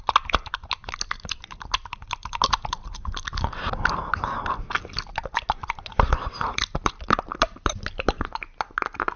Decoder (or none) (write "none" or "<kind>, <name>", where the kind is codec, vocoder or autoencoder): none